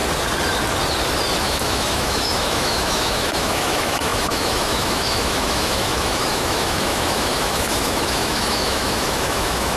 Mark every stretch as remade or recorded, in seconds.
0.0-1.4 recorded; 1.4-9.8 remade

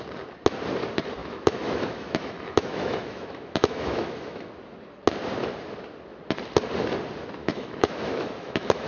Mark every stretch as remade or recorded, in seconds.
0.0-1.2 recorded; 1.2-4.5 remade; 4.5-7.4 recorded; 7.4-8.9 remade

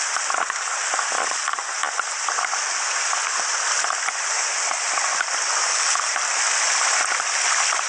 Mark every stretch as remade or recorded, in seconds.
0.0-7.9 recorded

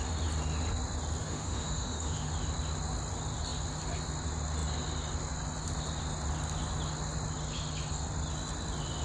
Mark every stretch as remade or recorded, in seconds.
0.0-1.2 recorded; 1.2-2.3 remade; 2.3-9.0 recorded

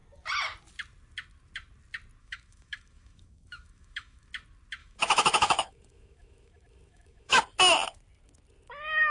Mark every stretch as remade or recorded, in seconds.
0.0-2.2 recorded; 2.2-4.3 remade; 4.3-4.8 recorded; 4.8-7.4 remade; 7.4-9.1 recorded

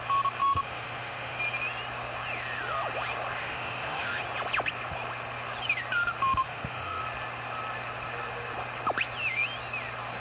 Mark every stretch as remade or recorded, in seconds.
0.0-0.4 recorded; 0.4-1.4 remade; 1.4-3.4 recorded; 3.4-4.2 remade; 4.2-6.4 recorded; 6.4-7.0 remade; 7.0-10.2 recorded

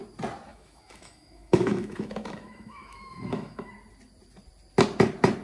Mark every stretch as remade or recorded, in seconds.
0.0-0.5 recorded; 0.5-3.7 remade; 3.7-5.4 recorded

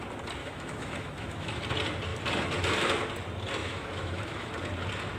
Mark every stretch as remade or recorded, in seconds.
0.0-0.4 recorded; 0.4-1.6 remade; 1.6-3.6 recorded; 3.6-4.5 remade; 4.5-5.2 recorded